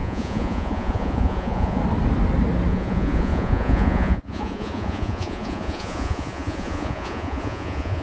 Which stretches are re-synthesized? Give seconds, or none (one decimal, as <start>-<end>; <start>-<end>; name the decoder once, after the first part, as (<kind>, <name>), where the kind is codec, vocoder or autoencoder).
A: 0.0-1.8 (vocoder, Vocos); 2.7-8.0